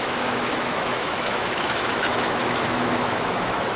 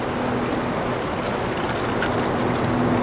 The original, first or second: second